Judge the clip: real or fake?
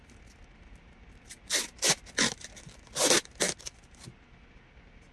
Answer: real